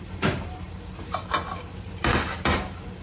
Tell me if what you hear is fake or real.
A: fake